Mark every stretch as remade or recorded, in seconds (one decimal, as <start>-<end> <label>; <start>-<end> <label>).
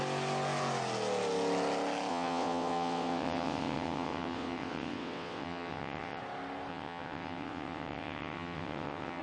0.0-2.1 recorded; 2.1-6.2 remade; 6.2-6.7 recorded; 6.7-9.2 remade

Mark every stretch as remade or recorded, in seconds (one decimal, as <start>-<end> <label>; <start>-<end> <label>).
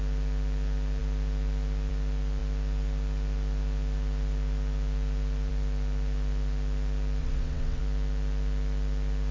0.0-7.2 recorded; 7.2-7.8 remade; 7.8-9.3 recorded